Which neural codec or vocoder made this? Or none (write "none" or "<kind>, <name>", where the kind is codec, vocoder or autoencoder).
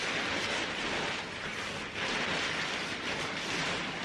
none